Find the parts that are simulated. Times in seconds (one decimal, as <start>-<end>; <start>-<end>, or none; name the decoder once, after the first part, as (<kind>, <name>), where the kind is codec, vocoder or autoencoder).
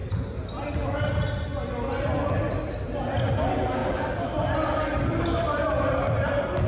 none